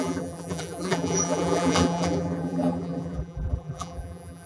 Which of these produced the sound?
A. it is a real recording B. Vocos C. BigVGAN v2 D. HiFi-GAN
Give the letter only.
C